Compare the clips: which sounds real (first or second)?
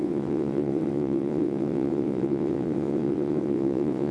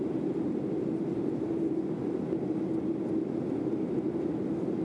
second